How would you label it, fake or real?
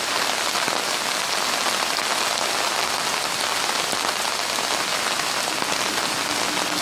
real